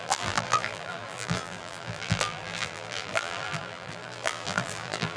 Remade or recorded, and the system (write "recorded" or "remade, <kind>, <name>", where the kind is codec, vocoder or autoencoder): remade, vocoder, BigVGAN v2